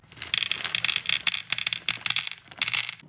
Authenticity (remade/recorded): recorded